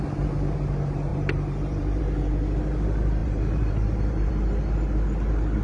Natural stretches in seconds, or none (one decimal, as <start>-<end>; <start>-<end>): 0.0-1.1; 2.0-3.2; 4.3-5.6